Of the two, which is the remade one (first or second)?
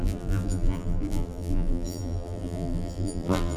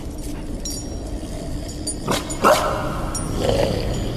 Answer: first